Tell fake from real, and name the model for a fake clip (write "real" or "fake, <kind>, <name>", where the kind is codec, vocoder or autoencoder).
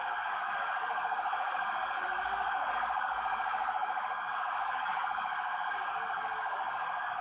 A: fake, codec, DAC